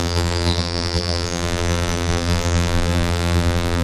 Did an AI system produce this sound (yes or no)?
yes